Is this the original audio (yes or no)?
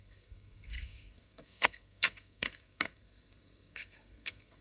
no